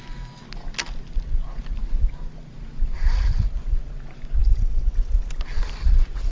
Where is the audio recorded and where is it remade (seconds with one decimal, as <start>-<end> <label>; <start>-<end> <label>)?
0.0-6.3 recorded